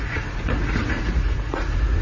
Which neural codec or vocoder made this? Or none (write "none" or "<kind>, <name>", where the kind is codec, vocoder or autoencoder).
vocoder, Vocos